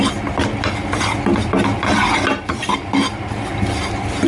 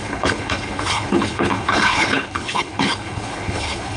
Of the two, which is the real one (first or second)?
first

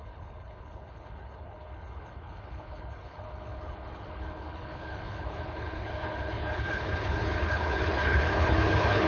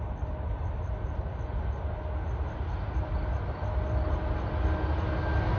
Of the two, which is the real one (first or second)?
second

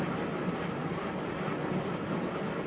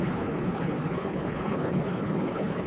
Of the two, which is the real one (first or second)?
first